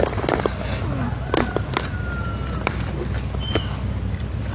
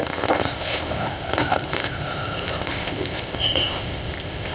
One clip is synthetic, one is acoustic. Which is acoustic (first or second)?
first